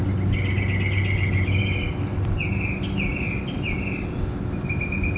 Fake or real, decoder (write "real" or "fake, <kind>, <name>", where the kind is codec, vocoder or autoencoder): real